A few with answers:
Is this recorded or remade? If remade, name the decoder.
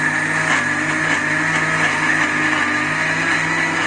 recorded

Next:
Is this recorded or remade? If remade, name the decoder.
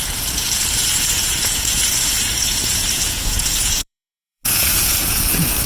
remade, vocoder, Vocos